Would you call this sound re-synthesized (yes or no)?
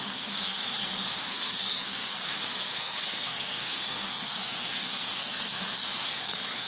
yes